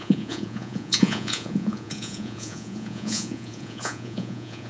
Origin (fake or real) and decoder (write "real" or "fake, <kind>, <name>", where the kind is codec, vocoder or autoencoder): fake, vocoder, Vocos